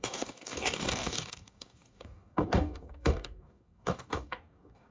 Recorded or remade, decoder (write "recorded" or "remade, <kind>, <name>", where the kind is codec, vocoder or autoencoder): remade, codec, DAC